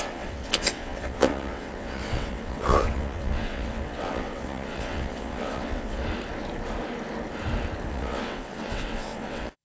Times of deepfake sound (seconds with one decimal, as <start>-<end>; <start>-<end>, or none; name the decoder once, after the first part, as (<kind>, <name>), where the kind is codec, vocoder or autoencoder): 0.0-6.0 (vocoder, WaveNeXt); 7.9-9.6